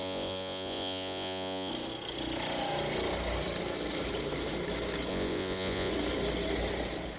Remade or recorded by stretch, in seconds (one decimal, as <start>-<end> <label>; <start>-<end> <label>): 0.0-1.7 remade; 1.7-5.1 recorded; 5.1-5.9 remade; 5.9-7.2 recorded